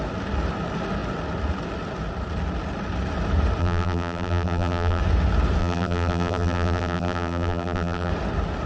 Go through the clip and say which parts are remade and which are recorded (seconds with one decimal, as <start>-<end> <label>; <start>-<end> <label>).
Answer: 0.0-3.6 recorded; 3.6-5.0 remade; 5.0-5.6 recorded; 5.6-8.1 remade; 8.1-8.7 recorded